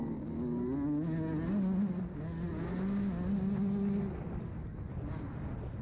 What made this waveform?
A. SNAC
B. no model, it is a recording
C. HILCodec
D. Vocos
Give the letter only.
B